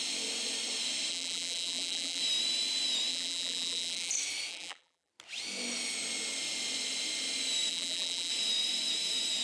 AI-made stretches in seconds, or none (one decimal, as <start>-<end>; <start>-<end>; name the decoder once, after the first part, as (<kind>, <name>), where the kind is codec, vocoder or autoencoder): 1.1-2.2 (vocoder, BigVGAN v2); 3.1-4.1; 4.5-5.1; 7.7-8.3